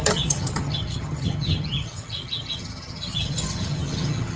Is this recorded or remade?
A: remade